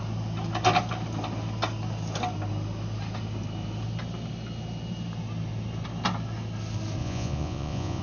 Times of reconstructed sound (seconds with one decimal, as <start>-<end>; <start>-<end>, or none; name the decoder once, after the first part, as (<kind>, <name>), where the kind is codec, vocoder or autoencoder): 7.0-8.0 (vocoder, Vocos)